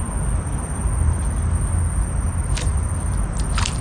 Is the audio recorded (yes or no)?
yes